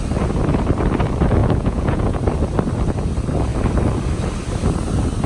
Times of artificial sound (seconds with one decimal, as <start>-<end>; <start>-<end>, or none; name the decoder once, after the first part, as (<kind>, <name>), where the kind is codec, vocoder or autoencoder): 1.4-2.2 (vocoder, Vocos)